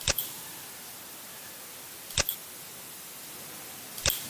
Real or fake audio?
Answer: real